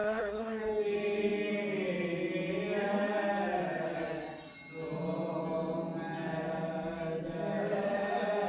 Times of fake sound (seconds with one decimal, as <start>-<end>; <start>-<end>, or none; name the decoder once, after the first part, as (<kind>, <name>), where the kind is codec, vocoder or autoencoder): 0.0-0.6 (codec, SNAC)